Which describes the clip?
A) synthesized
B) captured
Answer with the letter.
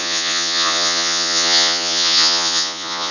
A